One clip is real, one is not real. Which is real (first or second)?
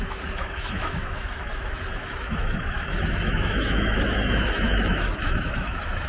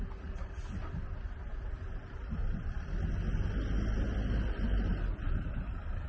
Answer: second